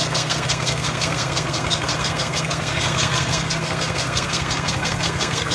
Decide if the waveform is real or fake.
fake